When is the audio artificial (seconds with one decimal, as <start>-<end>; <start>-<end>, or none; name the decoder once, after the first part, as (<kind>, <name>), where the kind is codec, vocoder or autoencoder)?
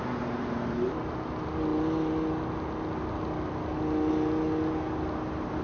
none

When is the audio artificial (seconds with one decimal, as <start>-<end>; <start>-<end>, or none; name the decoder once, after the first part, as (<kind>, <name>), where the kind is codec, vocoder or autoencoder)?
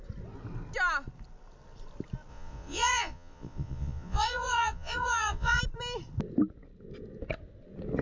2.3-5.6 (vocoder, Vocos)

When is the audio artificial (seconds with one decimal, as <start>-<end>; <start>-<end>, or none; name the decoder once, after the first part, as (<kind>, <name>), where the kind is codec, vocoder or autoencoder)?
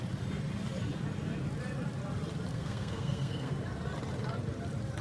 2.5-3.5 (codec, SNAC)